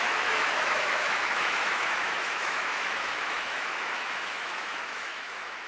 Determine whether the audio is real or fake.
fake